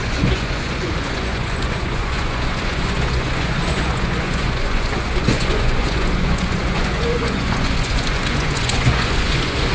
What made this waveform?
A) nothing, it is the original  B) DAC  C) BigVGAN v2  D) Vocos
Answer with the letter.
D